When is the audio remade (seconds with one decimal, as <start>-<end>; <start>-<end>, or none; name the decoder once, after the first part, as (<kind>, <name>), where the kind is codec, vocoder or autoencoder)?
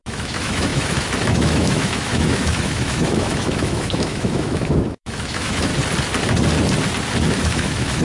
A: 0.0-5.7 (autoencoder, DAC-VAE); 7.3-8.0